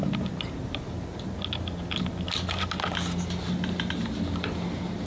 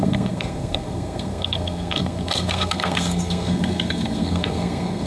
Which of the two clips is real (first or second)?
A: first